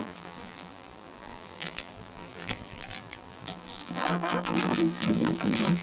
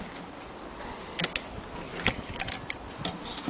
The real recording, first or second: second